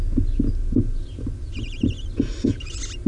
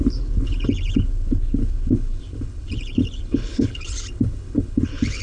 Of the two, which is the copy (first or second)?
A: second